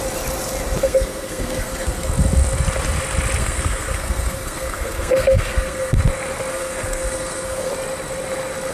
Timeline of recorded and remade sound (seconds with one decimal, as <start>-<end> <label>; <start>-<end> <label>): 0.0-0.8 recorded; 0.8-2.1 remade; 2.1-3.4 recorded; 3.4-6.0 remade; 6.0-6.5 recorded; 6.5-7.7 remade; 7.7-8.7 recorded